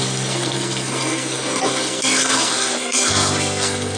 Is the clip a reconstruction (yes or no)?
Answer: yes